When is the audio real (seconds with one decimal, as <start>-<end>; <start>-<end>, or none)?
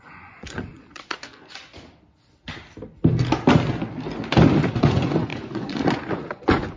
1.7-4.7